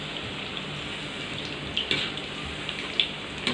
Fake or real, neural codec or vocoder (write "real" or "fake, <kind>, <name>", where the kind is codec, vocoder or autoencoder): real